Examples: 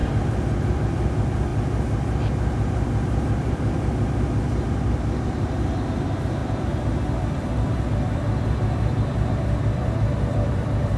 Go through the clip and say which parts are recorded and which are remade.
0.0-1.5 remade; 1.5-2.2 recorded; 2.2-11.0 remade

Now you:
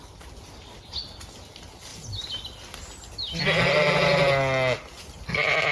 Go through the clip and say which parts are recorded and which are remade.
0.0-5.7 recorded

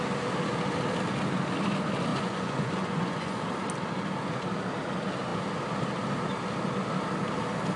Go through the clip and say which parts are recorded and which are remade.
0.0-2.1 recorded; 2.1-3.4 remade; 3.4-7.8 recorded

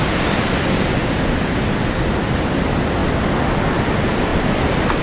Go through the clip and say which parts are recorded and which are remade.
0.0-1.0 recorded; 1.0-1.7 remade; 1.7-3.0 recorded; 3.0-3.6 remade; 3.6-5.0 recorded

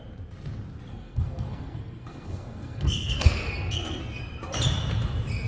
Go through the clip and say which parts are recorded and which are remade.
0.0-0.9 recorded; 0.9-4.2 remade; 4.2-5.5 recorded